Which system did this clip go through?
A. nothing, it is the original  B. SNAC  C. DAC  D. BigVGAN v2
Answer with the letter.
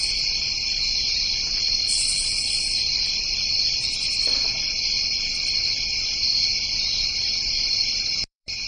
D